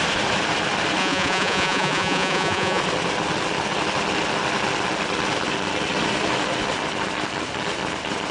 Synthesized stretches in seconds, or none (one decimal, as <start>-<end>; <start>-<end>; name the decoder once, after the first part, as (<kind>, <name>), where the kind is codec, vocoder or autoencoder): 1.0-2.8 (vocoder, Vocos)

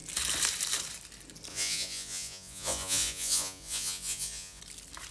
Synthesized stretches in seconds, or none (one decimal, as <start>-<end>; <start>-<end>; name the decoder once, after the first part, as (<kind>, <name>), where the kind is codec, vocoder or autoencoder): 1.5-4.6 (vocoder, Vocos)